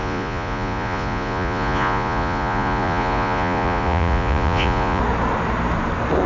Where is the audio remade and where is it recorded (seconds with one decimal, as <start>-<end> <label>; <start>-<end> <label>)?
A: 0.0-5.0 remade; 5.0-6.3 recorded

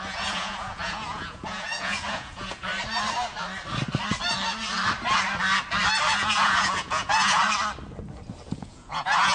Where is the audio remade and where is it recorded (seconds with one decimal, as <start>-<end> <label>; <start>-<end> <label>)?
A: 0.0-2.7 remade; 2.7-6.1 recorded; 6.1-7.4 remade; 7.4-8.5 recorded; 8.5-9.3 remade

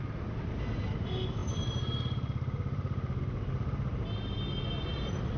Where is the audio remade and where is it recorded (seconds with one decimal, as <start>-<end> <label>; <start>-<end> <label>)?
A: 0.0-5.4 recorded

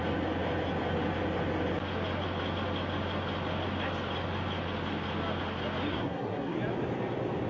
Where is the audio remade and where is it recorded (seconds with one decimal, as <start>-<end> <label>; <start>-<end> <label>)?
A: 0.0-5.9 recorded; 5.9-6.6 remade; 6.6-7.5 recorded

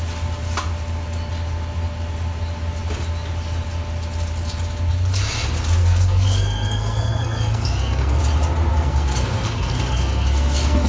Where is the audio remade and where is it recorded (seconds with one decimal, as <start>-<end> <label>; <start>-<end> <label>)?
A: 0.0-5.8 recorded; 5.8-8.2 remade; 8.2-8.7 recorded; 8.7-10.9 remade

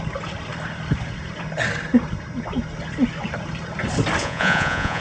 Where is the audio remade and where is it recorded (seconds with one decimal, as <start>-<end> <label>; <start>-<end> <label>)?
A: 0.0-4.2 recorded; 4.2-5.0 remade